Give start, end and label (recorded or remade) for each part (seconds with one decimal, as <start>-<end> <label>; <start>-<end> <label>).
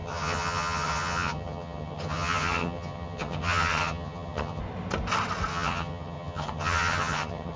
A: 0.0-4.6 remade; 4.6-5.5 recorded; 5.5-7.6 remade